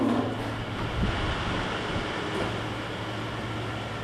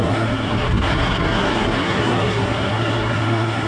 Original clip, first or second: first